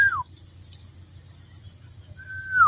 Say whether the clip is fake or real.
real